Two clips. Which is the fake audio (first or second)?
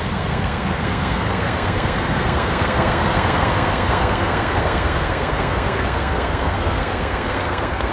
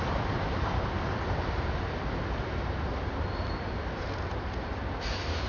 first